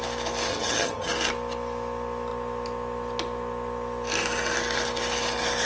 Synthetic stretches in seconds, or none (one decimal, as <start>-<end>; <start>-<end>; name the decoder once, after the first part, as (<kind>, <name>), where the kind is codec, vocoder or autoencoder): 0.5-1.1 (vocoder, HiFi-GAN)